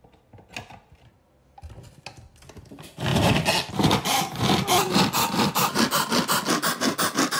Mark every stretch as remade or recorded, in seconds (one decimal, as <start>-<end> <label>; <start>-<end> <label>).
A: 0.0-7.4 recorded